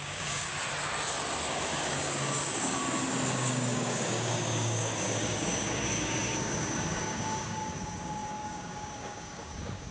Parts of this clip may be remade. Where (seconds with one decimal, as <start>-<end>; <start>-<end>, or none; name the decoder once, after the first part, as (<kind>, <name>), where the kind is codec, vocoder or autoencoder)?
0.0-0.5 (codec, DAC); 1.5-2.8; 3.3-9.9